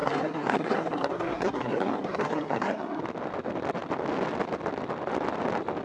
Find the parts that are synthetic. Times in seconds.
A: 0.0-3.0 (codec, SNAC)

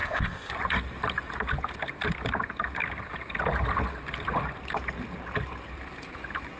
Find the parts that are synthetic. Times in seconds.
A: 0.0-0.5 (codec, ZipCodec)

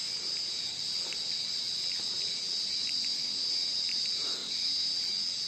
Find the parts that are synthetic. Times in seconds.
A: none

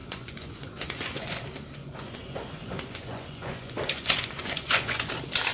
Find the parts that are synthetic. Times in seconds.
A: 0.0-1.4 (vocoder, Vocos); 1.8-5.1